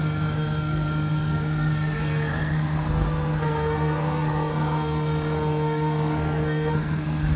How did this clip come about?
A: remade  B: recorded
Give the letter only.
A